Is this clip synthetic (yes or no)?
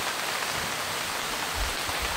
no